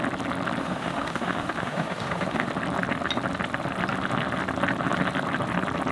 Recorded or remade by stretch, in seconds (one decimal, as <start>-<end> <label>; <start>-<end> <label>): 0.0-0.6 recorded; 0.6-2.5 remade; 2.5-5.9 recorded